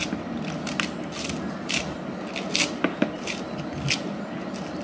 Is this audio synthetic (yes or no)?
no